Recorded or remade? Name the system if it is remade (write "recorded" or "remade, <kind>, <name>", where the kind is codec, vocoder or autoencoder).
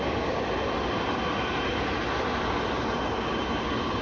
recorded